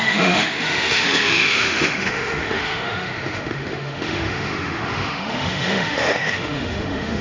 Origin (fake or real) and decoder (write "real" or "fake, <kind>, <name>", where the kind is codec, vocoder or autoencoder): fake, autoencoder, DAC-VAE